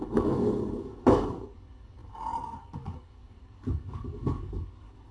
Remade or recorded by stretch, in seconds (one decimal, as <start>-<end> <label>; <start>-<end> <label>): 0.0-5.1 remade